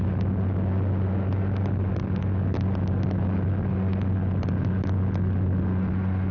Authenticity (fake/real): real